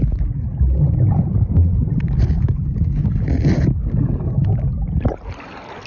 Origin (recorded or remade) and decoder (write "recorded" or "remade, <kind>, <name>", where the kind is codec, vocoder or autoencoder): recorded